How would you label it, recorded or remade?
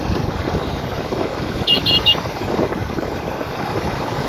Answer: remade